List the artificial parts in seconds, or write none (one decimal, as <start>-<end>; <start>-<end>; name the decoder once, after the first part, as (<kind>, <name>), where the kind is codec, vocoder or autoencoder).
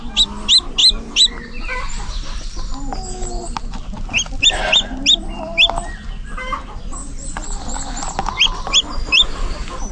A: none